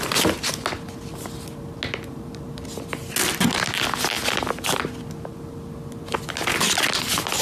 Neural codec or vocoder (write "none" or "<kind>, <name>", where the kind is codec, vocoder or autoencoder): none